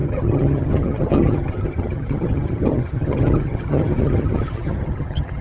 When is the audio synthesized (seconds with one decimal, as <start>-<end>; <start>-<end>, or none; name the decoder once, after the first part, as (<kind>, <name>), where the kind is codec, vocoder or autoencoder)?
0.0-5.4 (vocoder, HiFi-GAN)

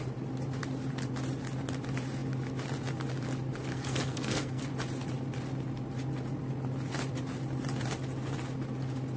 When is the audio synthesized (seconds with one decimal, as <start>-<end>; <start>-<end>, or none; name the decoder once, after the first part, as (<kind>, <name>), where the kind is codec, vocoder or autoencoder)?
3.7-4.6 (codec, SNAC)

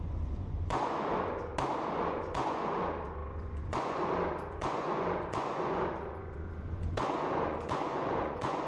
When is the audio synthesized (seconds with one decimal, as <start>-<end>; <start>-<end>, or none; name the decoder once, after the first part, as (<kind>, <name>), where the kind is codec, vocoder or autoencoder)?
0.0-1.5 (vocoder, Vocos); 2.0-8.7

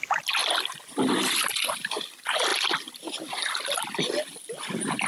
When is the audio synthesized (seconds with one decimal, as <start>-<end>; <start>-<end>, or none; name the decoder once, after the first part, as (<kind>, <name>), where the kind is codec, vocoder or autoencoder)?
2.5-4.6 (vocoder, BigVGAN v2)

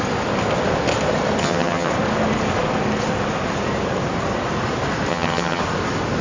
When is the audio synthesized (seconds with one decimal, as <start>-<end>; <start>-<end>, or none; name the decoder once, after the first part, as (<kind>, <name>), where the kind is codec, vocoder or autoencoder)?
1.4-1.9 (vocoder, HiFi-GAN); 5.1-5.6